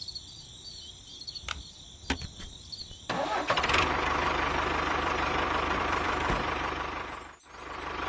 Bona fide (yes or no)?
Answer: no